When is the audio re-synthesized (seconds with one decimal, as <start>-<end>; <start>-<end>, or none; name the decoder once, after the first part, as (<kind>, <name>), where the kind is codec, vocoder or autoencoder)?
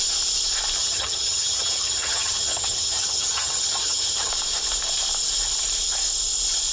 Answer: 0.8-4.3 (vocoder, HiFi-GAN)